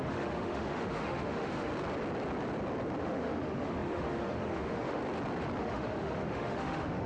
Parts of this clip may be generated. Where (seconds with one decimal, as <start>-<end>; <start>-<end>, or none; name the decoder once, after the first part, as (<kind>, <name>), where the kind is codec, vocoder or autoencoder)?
0.0-1.7 (autoencoder, DAC-VAE); 3.0-5.0; 5.6-7.1

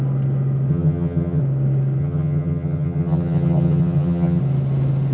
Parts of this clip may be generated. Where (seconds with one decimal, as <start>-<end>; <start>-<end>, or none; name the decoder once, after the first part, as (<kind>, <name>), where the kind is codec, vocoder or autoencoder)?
0.7-1.4 (vocoder, HiFi-GAN); 2.0-4.4

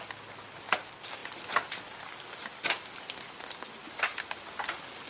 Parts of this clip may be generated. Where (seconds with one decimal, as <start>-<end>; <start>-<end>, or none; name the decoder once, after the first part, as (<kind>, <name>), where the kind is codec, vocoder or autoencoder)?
none

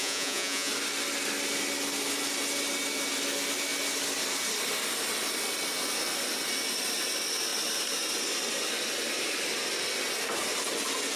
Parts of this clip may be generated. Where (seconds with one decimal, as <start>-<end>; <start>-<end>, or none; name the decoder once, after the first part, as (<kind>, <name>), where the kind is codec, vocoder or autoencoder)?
0.0-0.7 (vocoder, Vocos)

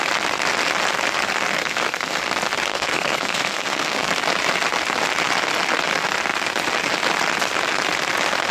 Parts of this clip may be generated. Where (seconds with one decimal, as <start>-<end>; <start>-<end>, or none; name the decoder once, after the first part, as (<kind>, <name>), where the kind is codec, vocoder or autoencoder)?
1.6-2.2 (codec, SNAC); 2.7-4.1

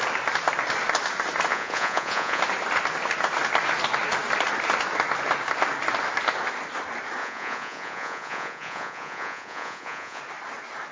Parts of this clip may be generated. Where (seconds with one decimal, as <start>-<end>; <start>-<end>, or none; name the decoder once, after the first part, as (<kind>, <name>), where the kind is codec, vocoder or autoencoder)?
1.5-2.4 (vocoder, Vocos); 7.2-10.2

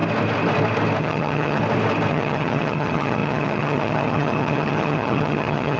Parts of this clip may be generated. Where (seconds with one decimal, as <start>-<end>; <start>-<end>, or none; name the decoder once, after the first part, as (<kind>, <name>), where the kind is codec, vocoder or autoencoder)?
1.0-1.6 (vocoder, HiFi-GAN); 2.1-5.8